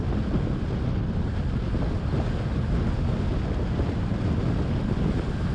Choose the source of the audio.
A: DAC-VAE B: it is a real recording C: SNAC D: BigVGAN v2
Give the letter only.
B